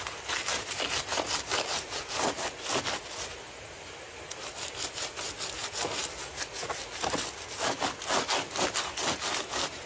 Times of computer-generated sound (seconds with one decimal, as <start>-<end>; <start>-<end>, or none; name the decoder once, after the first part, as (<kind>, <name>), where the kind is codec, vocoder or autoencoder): none